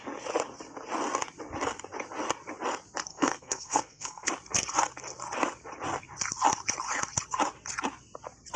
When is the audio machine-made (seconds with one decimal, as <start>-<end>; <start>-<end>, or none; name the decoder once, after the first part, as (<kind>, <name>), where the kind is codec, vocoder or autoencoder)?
3.1-4.3 (codec, SNAC)